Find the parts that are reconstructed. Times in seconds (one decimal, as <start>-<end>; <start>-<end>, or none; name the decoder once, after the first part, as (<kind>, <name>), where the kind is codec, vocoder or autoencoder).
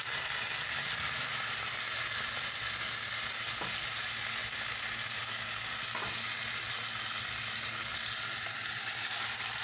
none